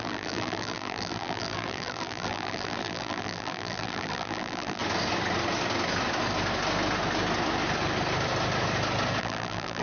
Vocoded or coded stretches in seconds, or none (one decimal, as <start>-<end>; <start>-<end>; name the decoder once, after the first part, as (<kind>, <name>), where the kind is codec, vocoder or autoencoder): 0.0-4.8 (vocoder, BigVGAN v2); 9.2-9.8